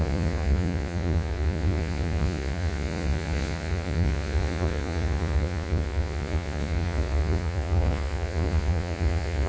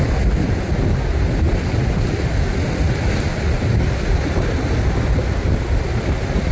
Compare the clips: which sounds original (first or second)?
second